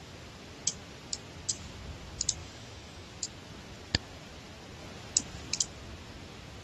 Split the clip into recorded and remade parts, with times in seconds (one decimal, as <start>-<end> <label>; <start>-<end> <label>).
0.0-2.4 recorded; 2.4-3.1 remade; 3.1-6.6 recorded